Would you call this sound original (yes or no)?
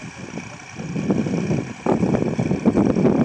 yes